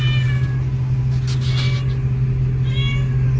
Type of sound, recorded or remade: recorded